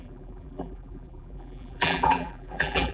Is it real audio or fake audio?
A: fake